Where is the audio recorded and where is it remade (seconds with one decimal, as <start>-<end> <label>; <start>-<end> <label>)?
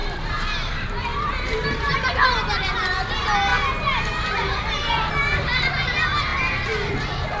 0.0-3.1 remade; 3.1-7.4 recorded